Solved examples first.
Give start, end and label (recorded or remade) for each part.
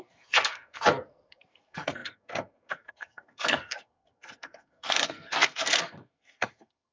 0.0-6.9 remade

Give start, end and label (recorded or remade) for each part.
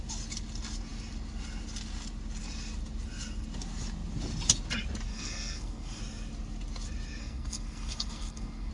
0.0-5.1 recorded; 5.1-6.0 remade; 6.0-7.2 recorded; 7.2-8.7 remade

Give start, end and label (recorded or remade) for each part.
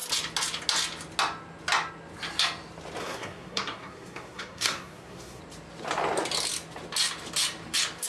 0.0-3.0 recorded; 3.0-5.4 remade; 5.4-8.1 recorded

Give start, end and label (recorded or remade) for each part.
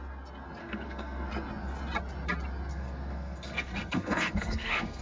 0.0-0.6 recorded; 0.6-1.3 remade; 1.3-2.7 recorded; 2.7-5.0 remade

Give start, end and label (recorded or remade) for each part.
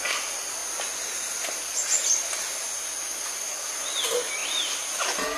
0.0-5.4 recorded